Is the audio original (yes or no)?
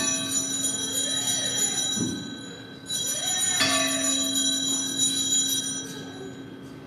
yes